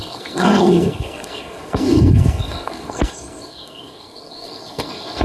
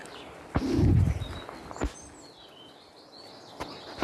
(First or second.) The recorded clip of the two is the second